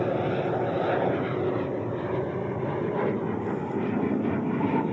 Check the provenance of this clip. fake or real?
real